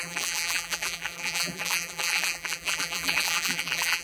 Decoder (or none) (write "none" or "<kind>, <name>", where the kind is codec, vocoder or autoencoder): vocoder, BigVGAN v2